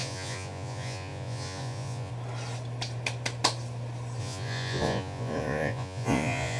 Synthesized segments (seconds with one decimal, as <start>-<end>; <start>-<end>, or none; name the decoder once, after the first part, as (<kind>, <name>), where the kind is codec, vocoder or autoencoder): 0.0-2.1 (vocoder, Vocos); 4.2-6.6